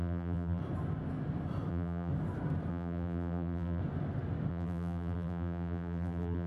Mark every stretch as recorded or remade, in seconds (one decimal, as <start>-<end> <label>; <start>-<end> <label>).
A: 0.0-0.6 remade; 0.6-1.7 recorded; 1.7-2.1 remade; 2.1-2.7 recorded; 2.7-3.8 remade; 3.8-4.5 recorded; 4.5-6.5 remade